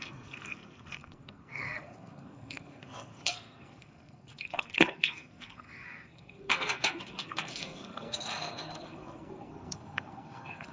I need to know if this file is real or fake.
fake